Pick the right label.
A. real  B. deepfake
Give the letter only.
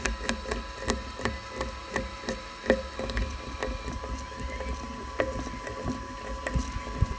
A